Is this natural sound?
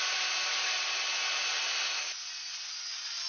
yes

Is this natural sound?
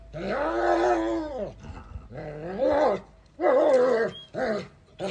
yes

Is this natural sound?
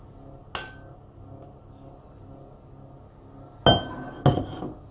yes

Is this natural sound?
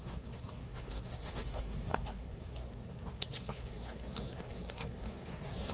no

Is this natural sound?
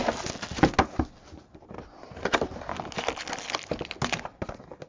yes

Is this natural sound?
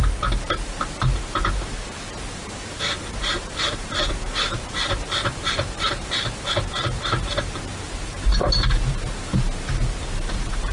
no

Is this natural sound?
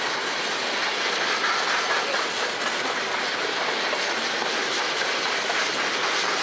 yes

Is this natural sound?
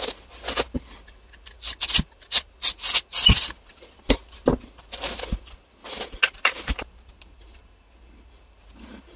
yes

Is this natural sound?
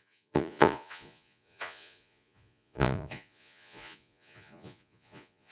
no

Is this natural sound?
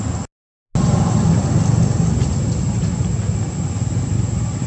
yes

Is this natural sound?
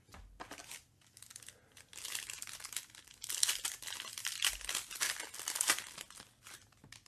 yes